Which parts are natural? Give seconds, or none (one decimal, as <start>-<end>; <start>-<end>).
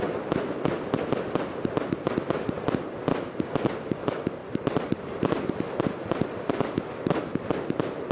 0.0-4.4; 6.9-8.1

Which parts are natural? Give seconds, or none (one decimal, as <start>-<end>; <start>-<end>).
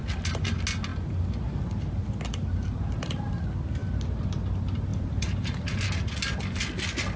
0.0-0.9; 3.4-4.9; 5.8-7.2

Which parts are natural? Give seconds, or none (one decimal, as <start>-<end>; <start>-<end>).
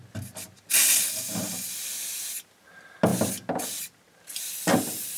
0.0-5.2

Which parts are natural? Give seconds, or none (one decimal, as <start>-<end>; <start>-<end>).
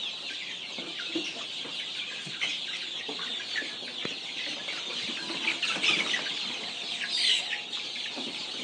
0.0-1.7; 2.5-8.6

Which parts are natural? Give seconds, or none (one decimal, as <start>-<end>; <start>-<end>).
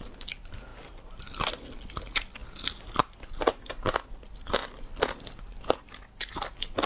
0.0-0.7; 1.3-6.9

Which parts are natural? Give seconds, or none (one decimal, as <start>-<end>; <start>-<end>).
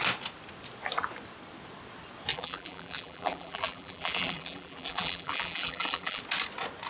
0.0-2.3; 6.2-6.9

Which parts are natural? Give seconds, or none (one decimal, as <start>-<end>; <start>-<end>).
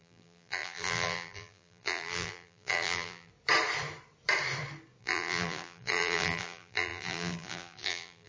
3.3-5.0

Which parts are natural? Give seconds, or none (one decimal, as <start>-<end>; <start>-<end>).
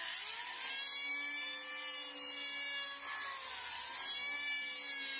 0.0-5.2